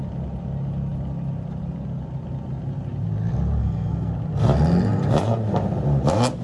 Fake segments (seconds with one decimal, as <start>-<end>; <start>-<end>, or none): 3.6-4.1